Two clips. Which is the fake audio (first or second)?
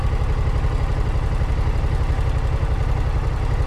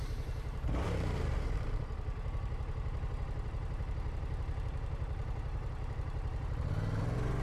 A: second